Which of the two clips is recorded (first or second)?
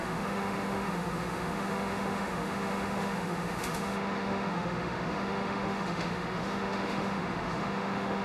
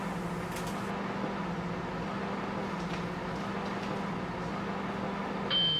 second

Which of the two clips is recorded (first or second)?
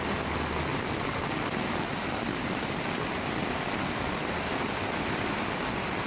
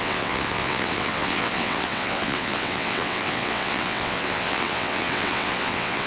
first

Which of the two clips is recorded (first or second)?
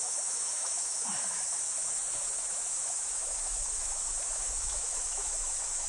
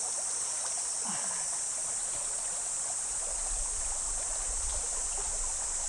second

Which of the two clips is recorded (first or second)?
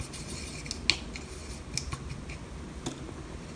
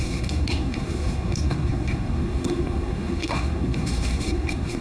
first